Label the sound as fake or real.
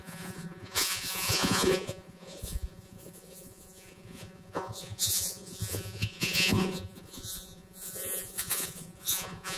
fake